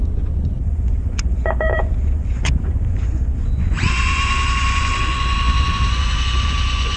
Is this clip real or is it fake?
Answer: fake